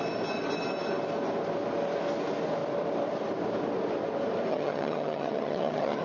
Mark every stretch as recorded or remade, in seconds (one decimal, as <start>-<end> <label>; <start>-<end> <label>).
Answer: 0.0-4.5 recorded; 4.5-6.0 remade